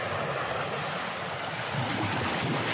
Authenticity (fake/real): real